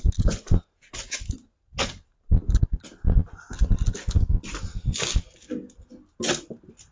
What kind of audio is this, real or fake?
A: real